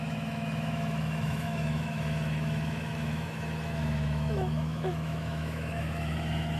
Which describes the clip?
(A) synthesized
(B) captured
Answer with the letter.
A